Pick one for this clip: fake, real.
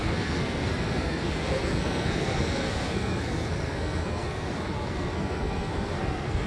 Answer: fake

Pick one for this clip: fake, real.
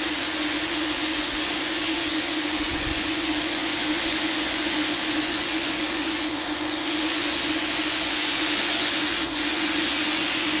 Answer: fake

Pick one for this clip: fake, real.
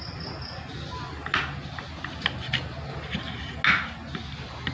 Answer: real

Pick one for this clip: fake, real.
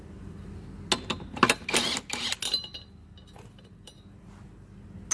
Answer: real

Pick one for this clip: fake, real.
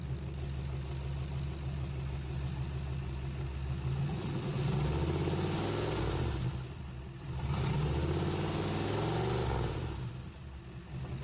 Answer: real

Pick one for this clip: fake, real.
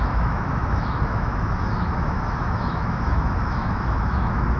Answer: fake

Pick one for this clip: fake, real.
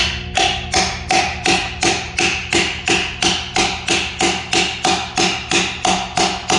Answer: real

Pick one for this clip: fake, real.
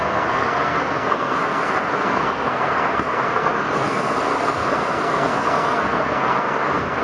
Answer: fake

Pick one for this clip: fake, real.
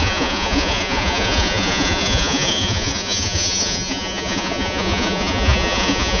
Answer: fake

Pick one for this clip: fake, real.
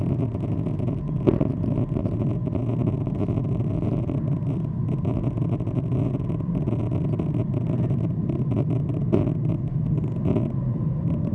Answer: real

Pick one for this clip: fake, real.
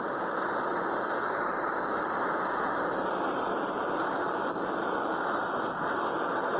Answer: real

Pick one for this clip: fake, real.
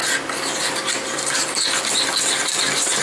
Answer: real